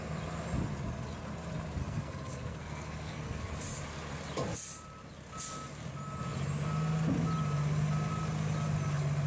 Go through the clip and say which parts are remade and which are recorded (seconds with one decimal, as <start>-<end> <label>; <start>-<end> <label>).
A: 0.0-1.8 recorded; 1.8-3.5 remade; 3.5-9.3 recorded